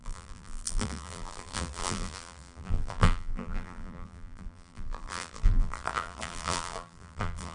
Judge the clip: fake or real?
fake